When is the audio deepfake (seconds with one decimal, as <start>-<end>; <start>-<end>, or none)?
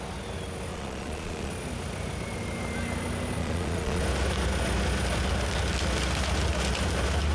0.7-1.5; 3.4-4.0